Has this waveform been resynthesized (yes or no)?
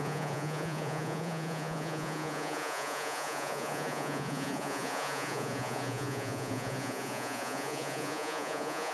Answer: yes